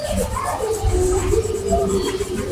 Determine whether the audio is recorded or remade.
remade